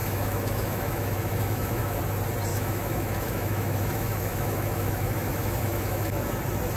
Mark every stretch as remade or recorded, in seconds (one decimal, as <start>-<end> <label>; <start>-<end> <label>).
0.0-2.0 remade; 2.0-2.5 recorded; 2.5-6.3 remade; 6.3-6.8 recorded